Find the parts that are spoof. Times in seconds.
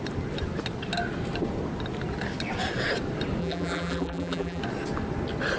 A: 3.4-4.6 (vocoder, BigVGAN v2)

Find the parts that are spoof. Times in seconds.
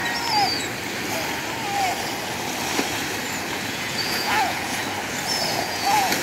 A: 3.7-4.8 (vocoder, Vocos); 5.3-6.2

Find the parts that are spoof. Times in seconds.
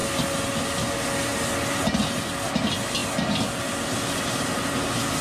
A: none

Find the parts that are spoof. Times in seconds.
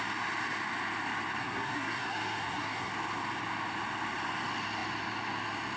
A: 1.4-2.9 (codec, SNAC)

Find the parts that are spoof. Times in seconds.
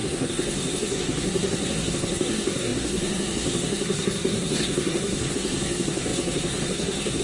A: 0.0-7.2 (codec, SNAC)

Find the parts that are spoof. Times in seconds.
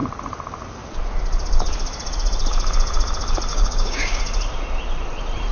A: 3.5-4.2 (codec, DAC)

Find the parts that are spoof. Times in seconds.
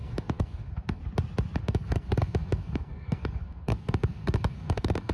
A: 0.0-1.0 (codec, SNAC); 1.6-5.1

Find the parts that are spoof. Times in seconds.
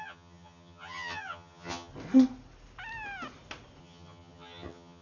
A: 0.0-1.9 (vocoder, HiFi-GAN); 3.8-5.0